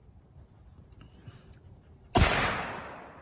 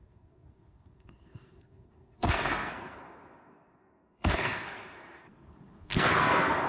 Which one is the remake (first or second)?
second